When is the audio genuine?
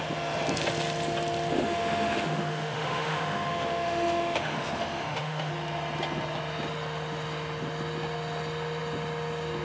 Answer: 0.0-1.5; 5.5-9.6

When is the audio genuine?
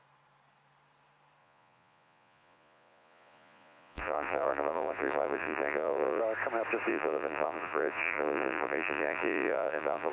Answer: 0.0-1.4; 6.2-6.9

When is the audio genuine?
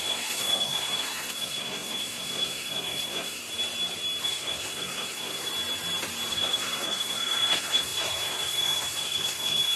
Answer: 3.4-4.2; 5.5-6.3